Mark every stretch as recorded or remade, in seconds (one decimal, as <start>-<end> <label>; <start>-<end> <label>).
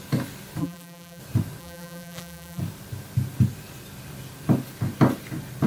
0.0-0.6 recorded; 0.6-1.2 remade; 1.2-1.6 recorded; 1.6-2.6 remade; 2.6-5.7 recorded